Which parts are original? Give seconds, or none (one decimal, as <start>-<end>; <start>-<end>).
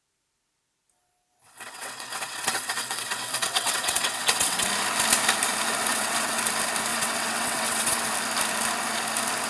0.0-1.4; 4.7-5.9; 6.4-6.9; 8.1-9.5